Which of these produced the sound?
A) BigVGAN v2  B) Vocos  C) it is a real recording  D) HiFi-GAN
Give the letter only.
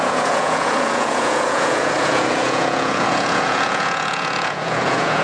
B